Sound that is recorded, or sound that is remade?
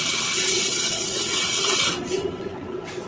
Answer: remade